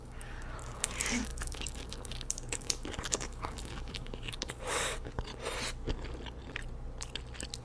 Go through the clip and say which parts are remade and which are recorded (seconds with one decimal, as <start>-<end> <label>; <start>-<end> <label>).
0.0-5.3 remade; 5.3-7.6 recorded